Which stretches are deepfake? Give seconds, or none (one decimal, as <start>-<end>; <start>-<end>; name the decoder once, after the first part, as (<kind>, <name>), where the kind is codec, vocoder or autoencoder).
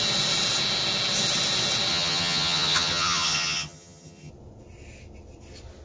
1.9-4.3 (vocoder, HiFi-GAN)